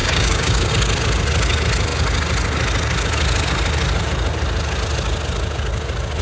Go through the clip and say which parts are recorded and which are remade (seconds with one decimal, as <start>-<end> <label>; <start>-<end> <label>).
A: 0.0-0.7 remade; 0.7-6.2 recorded